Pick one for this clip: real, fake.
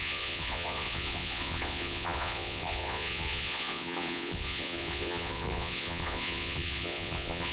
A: fake